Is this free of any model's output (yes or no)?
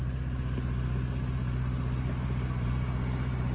yes